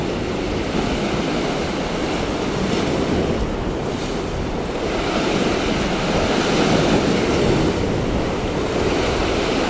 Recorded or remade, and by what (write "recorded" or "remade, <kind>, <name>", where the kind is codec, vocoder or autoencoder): recorded